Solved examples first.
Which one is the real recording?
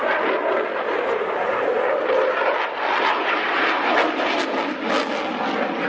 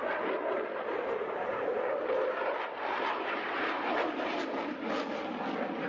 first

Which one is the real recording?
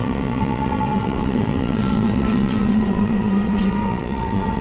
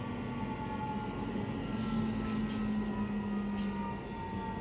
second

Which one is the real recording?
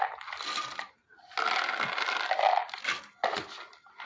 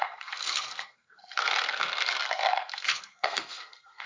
first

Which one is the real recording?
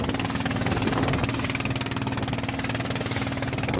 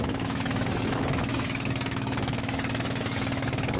first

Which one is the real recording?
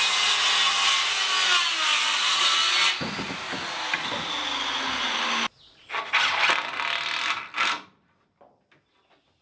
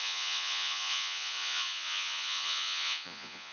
first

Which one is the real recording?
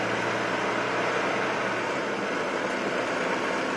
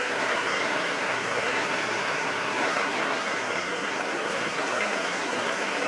first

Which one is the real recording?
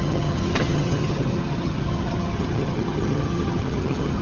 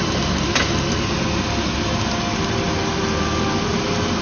second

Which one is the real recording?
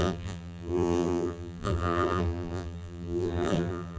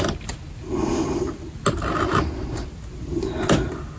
second